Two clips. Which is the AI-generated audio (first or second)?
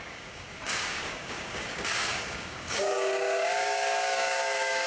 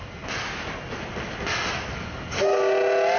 first